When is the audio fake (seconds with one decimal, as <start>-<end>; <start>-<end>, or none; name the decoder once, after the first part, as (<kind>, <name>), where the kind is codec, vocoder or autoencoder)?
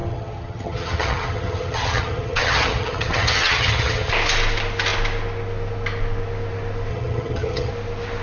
0.0-4.1 (vocoder, HiFi-GAN); 6.9-7.7